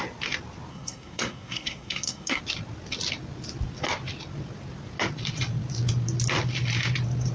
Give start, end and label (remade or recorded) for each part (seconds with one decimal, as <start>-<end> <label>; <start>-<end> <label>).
0.0-0.7 recorded; 0.7-2.4 remade; 2.4-7.3 recorded